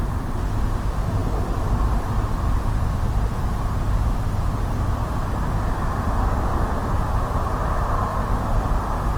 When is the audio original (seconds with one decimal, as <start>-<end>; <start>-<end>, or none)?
0.0-1.2; 2.1-9.2